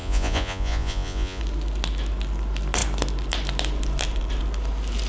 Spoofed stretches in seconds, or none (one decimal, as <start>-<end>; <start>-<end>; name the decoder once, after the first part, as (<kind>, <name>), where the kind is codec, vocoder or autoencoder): 0.0-1.4 (vocoder, Vocos)